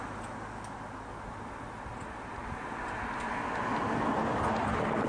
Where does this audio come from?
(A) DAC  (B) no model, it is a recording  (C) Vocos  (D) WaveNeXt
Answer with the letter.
B